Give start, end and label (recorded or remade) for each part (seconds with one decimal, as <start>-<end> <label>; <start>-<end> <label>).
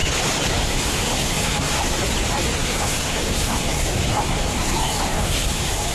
0.0-0.5 recorded; 0.5-2.0 remade; 2.0-2.6 recorded; 2.6-5.9 remade